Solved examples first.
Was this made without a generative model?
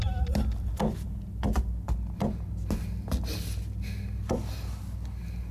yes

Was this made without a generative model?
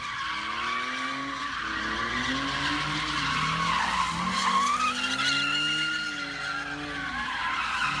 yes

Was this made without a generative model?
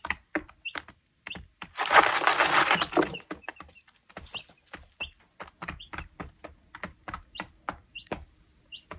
no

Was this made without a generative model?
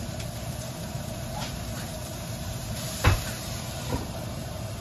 no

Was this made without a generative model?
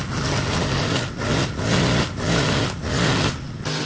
yes